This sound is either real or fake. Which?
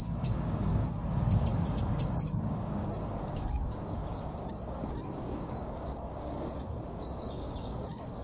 fake